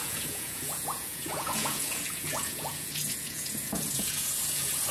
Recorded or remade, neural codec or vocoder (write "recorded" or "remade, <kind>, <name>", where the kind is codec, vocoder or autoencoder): remade, vocoder, Vocos